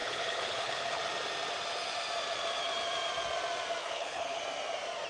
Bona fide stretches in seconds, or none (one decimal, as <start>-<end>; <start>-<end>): 1.0-3.8; 4.4-5.1